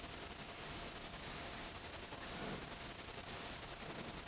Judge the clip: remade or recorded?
recorded